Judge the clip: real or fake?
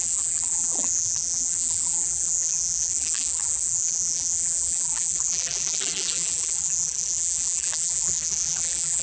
fake